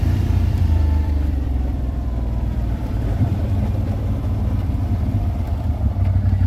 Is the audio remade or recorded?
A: remade